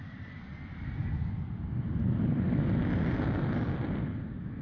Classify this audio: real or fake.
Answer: real